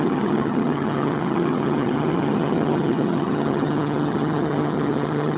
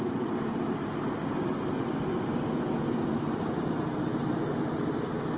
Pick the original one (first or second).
second